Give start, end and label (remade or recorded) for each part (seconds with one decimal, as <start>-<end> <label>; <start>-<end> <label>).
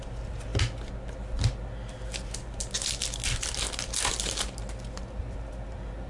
0.0-6.1 recorded